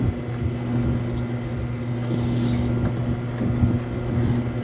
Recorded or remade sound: recorded